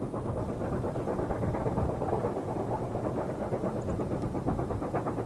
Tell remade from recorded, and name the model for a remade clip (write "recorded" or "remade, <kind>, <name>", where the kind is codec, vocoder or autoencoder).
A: recorded